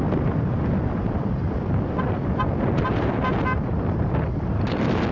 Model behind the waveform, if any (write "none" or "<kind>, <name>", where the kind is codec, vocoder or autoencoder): none